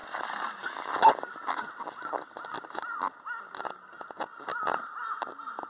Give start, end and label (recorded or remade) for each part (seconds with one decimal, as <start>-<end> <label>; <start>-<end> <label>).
0.0-5.7 recorded